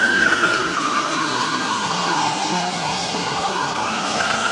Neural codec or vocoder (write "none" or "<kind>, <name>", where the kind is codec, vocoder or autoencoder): codec, SNAC